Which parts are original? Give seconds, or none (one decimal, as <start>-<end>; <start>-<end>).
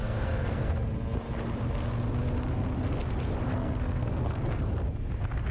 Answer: 0.7-3.5; 4.6-5.5